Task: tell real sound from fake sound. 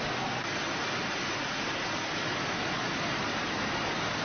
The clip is real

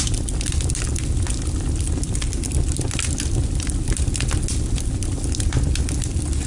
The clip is real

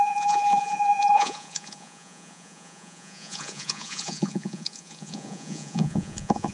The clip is fake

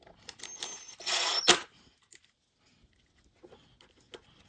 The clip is real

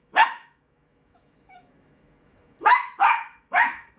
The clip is fake